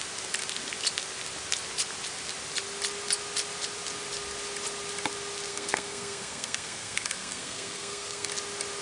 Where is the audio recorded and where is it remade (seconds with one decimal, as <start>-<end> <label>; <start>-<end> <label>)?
0.0-5.5 recorded; 5.5-8.3 remade; 8.3-8.8 recorded